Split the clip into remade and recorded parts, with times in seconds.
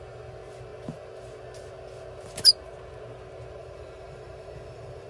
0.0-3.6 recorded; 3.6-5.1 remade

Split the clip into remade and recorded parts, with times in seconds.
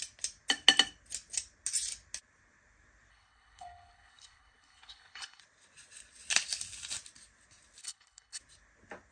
0.0-3.1 recorded; 3.1-5.4 remade; 5.4-7.8 recorded; 7.8-8.4 remade; 8.4-9.1 recorded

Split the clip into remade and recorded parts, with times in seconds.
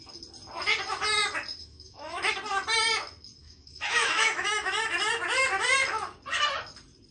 0.0-1.6 recorded; 1.6-2.3 remade; 2.3-3.4 recorded; 3.4-4.7 remade; 4.7-7.1 recorded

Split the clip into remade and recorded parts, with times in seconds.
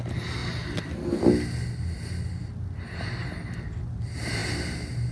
0.0-5.1 recorded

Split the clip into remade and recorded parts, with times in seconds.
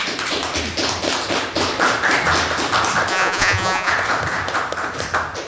0.0-3.1 recorded; 3.1-3.9 remade; 3.9-5.5 recorded